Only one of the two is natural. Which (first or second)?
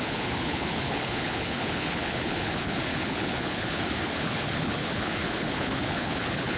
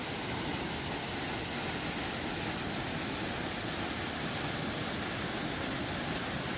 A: second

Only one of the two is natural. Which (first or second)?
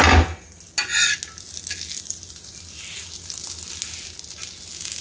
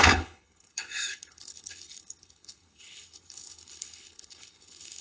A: first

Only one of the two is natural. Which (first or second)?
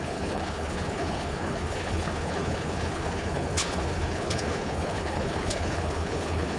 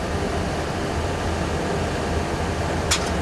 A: second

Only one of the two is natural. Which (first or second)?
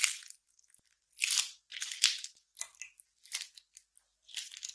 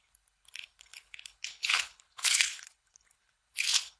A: first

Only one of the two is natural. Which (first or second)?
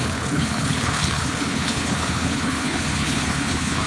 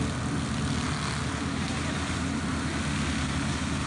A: second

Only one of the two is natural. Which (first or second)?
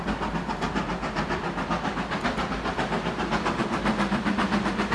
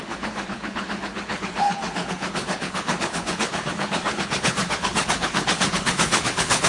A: first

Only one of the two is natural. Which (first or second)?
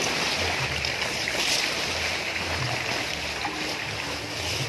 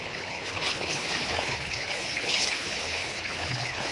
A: first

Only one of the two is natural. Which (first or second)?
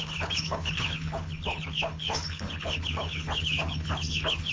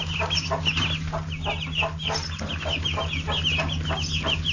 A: second